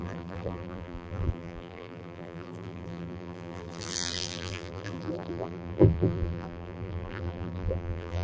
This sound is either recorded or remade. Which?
remade